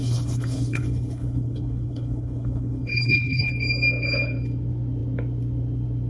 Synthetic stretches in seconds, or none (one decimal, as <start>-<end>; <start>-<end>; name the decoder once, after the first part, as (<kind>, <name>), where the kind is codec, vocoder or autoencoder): 0.0-3.5 (codec, HILCodec)